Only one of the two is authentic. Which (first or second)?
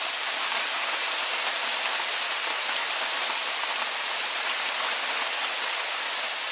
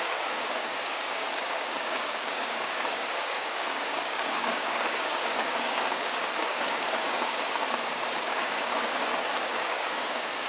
first